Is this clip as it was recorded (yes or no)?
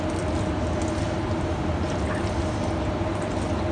yes